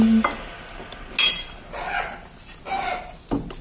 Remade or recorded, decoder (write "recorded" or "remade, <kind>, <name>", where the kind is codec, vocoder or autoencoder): recorded